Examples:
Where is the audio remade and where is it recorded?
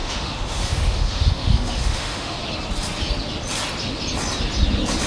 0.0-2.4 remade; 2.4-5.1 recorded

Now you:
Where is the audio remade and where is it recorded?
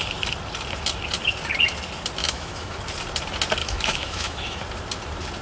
0.0-2.2 recorded; 2.2-2.8 remade; 2.8-3.6 recorded; 3.6-4.6 remade; 4.6-5.4 recorded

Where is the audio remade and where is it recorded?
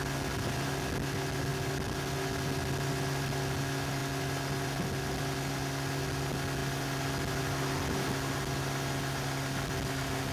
0.0-10.3 recorded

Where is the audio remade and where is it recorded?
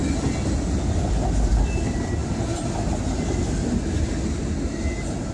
0.0-5.3 recorded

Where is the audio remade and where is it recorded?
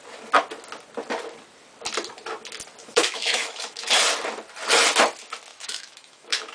0.0-2.8 recorded; 2.8-3.9 remade; 3.9-5.5 recorded; 5.5-6.5 remade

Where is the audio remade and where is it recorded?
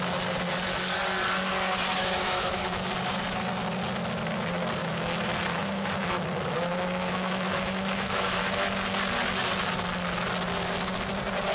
0.0-2.0 recorded; 2.0-2.7 remade; 2.7-4.8 recorded; 4.8-8.4 remade; 8.4-11.5 recorded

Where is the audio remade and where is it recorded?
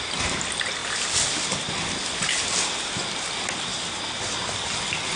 0.0-5.2 recorded